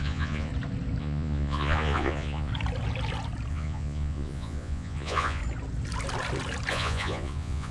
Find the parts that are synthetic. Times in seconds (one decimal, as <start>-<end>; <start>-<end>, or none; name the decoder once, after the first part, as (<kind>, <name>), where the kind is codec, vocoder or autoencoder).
0.0-0.5 (vocoder, Vocos); 1.0-2.5; 3.5-5.4; 6.7-7.7